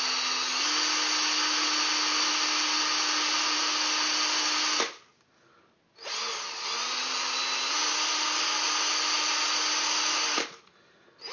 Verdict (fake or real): real